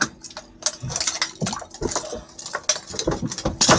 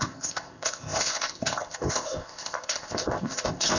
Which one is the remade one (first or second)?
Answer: second